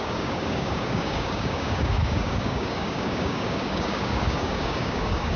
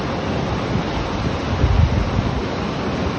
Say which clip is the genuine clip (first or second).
second